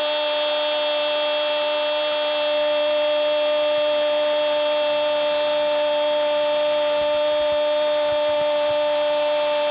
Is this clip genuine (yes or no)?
yes